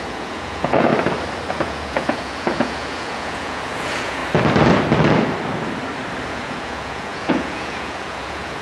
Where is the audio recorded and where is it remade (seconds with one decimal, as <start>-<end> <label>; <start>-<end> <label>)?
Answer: 0.0-0.9 remade; 0.9-1.5 recorded; 1.5-4.2 remade; 4.2-6.3 recorded; 6.3-8.6 remade